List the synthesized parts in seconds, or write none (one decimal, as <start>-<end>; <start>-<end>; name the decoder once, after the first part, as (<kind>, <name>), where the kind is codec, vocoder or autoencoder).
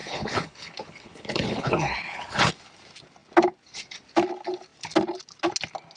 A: 0.0-2.5 (codec, HILCodec)